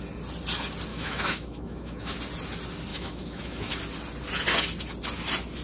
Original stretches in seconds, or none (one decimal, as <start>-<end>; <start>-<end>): 0.0-0.9; 2.2-2.9; 3.8-5.6